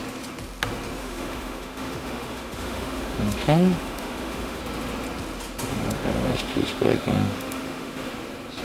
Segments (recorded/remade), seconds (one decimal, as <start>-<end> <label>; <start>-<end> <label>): 0.0-1.0 recorded; 1.0-4.6 remade; 4.6-5.7 recorded; 5.7-8.1 remade; 8.1-8.6 recorded